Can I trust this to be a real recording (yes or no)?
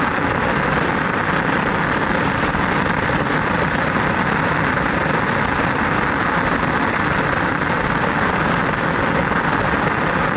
no